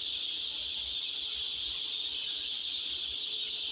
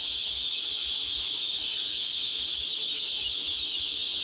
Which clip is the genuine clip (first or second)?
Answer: first